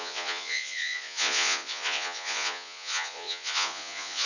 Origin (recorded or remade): remade